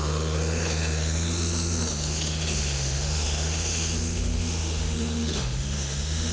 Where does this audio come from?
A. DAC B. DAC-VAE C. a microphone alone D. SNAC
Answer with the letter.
B